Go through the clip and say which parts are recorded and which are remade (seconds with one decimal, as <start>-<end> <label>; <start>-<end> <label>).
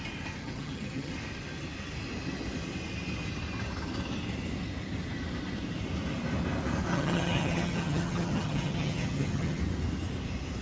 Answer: 0.0-0.4 recorded; 0.4-1.1 remade; 1.1-6.9 recorded; 6.9-9.6 remade; 9.6-10.6 recorded